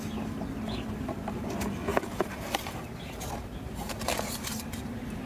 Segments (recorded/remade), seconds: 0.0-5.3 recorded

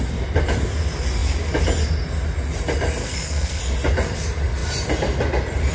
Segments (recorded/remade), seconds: 0.0-3.0 recorded; 3.0-3.6 remade; 3.6-5.7 recorded

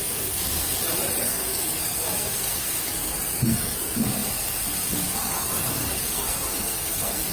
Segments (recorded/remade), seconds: 0.0-0.7 remade; 0.7-1.2 recorded; 1.2-7.3 remade

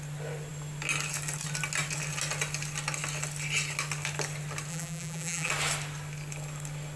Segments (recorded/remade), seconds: 0.0-4.7 recorded; 4.7-5.5 remade; 5.5-7.0 recorded

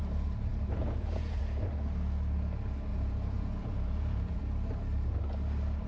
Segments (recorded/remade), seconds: 0.0-0.5 recorded; 0.5-1.4 remade; 1.4-2.9 recorded; 2.9-4.4 remade; 4.4-5.9 recorded

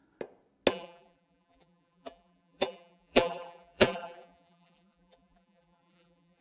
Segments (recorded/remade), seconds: 0.0-0.7 recorded; 0.7-6.4 remade

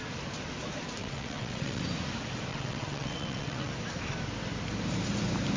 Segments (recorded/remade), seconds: 0.0-1.0 recorded; 1.0-1.8 remade; 1.8-2.5 recorded; 2.5-3.7 remade; 3.7-5.6 recorded